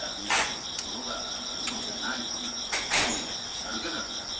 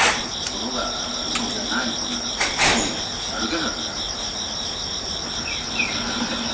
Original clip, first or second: second